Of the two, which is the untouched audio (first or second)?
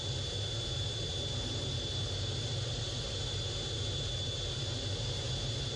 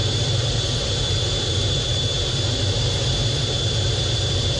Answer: first